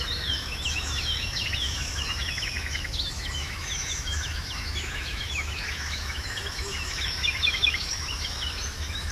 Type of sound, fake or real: fake